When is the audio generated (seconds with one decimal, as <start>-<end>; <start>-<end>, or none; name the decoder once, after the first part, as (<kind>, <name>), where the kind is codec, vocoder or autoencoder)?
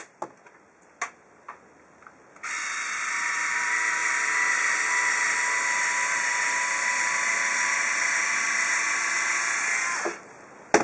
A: none